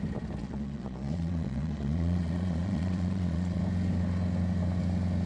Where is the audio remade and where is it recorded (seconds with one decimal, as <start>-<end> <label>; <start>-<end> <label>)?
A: 0.0-0.4 recorded; 0.4-3.6 remade; 3.6-5.3 recorded